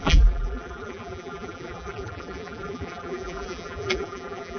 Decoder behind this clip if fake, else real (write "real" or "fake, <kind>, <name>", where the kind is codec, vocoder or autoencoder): fake, vocoder, BigVGAN v2